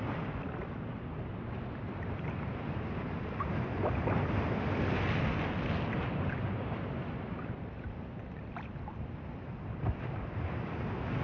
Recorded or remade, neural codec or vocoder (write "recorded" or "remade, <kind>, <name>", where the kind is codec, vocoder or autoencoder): recorded